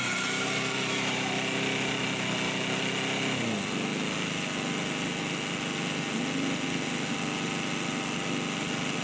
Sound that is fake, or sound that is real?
real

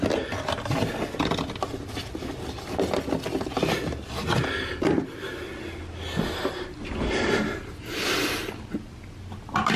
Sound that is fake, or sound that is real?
real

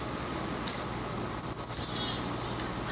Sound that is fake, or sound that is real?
real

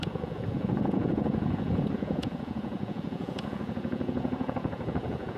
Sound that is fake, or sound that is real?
fake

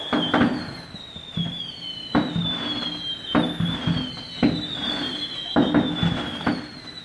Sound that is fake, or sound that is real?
real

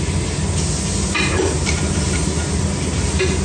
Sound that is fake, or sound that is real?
real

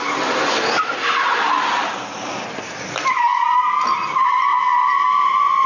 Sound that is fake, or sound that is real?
real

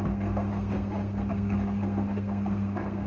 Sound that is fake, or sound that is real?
fake